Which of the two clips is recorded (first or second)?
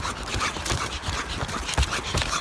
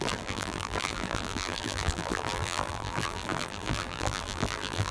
first